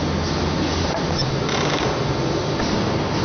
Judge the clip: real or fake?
real